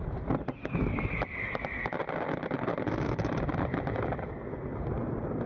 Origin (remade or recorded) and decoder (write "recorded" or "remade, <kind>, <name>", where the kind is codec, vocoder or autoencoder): recorded